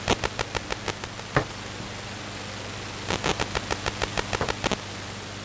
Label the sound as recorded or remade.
recorded